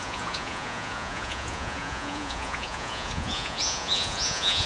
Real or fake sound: fake